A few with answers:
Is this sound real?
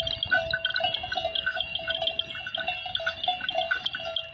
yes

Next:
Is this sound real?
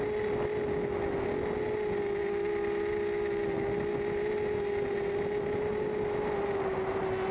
yes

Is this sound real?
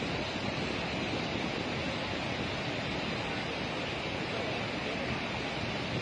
yes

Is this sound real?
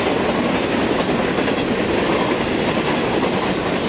yes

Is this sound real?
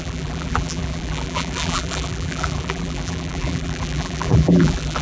no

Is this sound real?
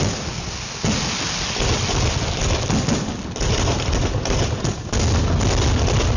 yes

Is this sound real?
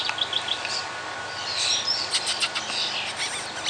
yes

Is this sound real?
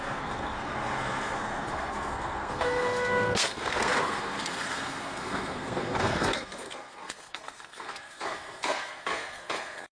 no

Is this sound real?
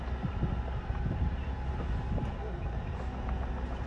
yes